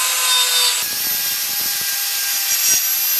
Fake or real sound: real